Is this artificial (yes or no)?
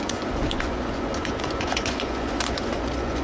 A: yes